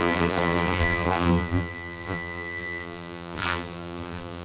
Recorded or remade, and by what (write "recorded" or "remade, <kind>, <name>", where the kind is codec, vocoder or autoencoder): remade, vocoder, BigVGAN v2